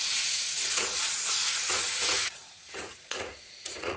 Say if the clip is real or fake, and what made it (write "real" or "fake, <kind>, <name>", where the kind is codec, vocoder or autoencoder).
fake, vocoder, Vocos